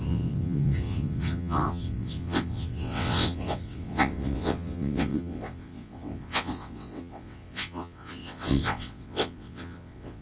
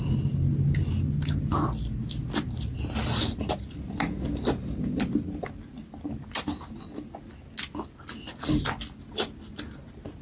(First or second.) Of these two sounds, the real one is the second